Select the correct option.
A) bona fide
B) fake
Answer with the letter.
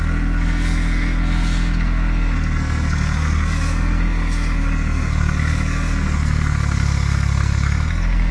B